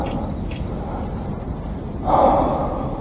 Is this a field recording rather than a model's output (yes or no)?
yes